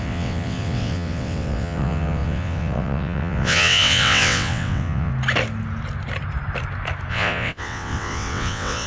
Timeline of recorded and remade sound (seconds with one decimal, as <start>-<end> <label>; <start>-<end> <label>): 0.0-5.1 remade; 5.1-7.1 recorded; 7.1-8.9 remade